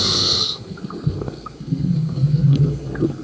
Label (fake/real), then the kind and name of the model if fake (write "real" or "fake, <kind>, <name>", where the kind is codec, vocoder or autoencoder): fake, codec, SNAC